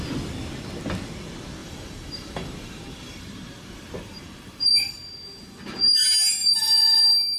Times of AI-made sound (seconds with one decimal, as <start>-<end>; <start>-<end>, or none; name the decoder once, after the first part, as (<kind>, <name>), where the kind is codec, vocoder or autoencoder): 1.6-6.0 (vocoder, BigVGAN v2); 6.4-7.4